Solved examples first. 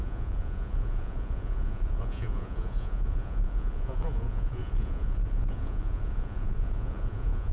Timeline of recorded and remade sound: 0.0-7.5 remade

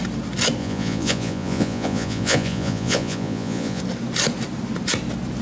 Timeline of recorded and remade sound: 0.0-0.6 recorded; 0.6-3.8 remade; 3.8-5.4 recorded